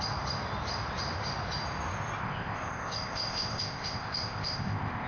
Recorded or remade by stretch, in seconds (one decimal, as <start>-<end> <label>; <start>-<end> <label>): 0.0-2.2 recorded; 2.2-5.1 remade